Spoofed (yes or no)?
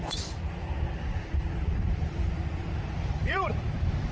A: yes